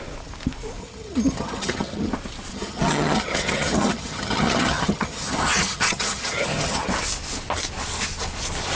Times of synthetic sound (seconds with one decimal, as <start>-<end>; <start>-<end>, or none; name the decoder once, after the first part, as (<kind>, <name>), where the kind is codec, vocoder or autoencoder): 0.8-2.1 (vocoder, HiFi-GAN); 2.5-6.9